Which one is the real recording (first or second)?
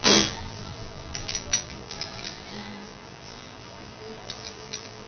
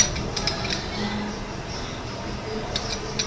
second